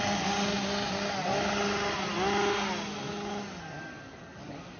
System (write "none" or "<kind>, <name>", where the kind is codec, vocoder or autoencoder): none